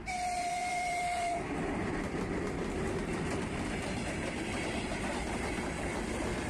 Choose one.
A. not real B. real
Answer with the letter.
A